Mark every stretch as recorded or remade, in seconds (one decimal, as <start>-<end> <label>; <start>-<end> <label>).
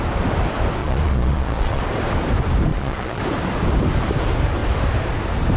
0.0-0.8 recorded; 0.8-1.8 remade; 1.8-2.7 recorded; 2.7-3.2 remade; 3.2-5.6 recorded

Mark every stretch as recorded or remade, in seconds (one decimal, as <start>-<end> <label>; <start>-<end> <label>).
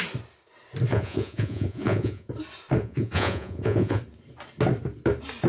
0.0-0.9 recorded; 0.9-2.3 remade; 2.3-2.8 recorded; 2.8-4.0 remade; 4.0-5.5 recorded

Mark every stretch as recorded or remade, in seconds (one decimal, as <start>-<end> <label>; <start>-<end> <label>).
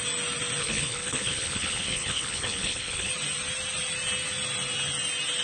0.0-0.6 recorded; 0.6-3.1 remade; 3.1-5.4 recorded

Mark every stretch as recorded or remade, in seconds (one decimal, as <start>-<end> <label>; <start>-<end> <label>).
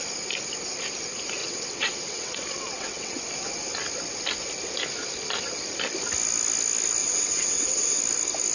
0.0-1.4 recorded; 1.4-3.2 remade; 3.2-7.0 recorded; 7.0-8.0 remade; 8.0-8.5 recorded